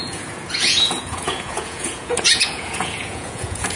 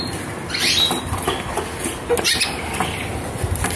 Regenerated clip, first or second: first